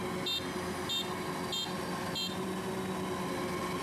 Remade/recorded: recorded